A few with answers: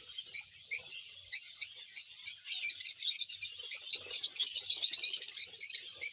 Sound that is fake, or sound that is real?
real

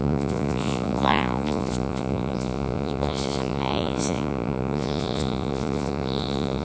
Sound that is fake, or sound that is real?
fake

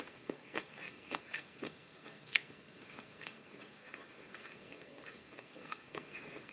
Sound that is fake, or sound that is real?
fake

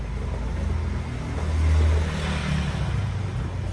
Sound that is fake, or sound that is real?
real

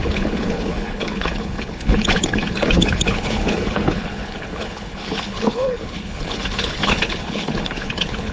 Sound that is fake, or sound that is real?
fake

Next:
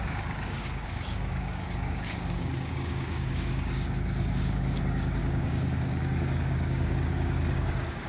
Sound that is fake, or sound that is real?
fake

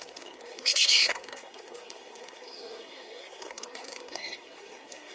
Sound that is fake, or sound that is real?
fake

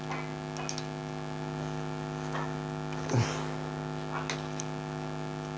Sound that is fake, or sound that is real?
real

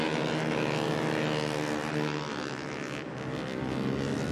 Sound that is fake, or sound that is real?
real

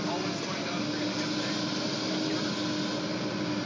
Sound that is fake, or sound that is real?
real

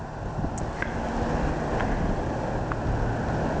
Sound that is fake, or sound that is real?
real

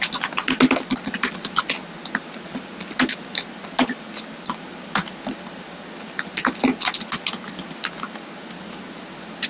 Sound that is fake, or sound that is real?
real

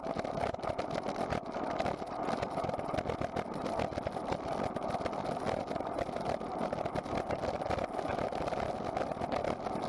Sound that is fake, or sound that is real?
real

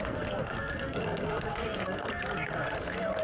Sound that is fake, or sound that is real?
fake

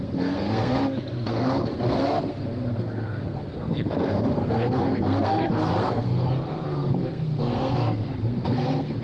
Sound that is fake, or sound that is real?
fake